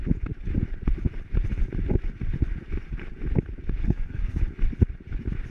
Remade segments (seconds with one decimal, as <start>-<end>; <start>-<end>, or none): 3.8-4.4